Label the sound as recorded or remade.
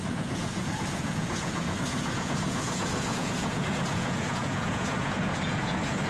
remade